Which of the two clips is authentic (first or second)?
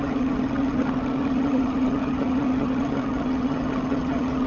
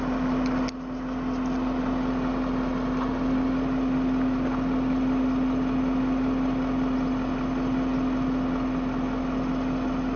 second